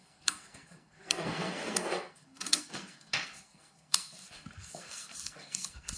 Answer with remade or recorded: remade